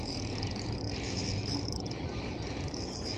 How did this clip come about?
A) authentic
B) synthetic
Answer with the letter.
B